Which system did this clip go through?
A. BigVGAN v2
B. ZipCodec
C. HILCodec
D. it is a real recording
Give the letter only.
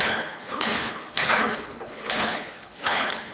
C